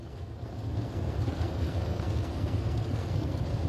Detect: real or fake fake